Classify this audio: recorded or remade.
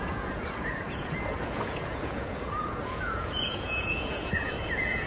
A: remade